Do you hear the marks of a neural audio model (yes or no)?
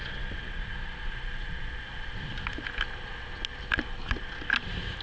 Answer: no